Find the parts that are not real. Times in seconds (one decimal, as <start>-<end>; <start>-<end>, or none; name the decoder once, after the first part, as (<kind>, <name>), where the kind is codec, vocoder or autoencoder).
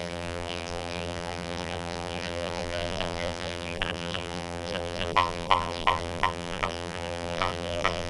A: 0.0-8.1 (vocoder, BigVGAN v2)